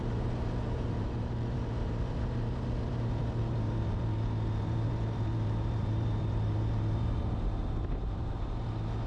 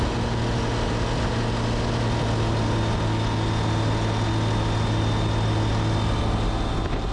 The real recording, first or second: second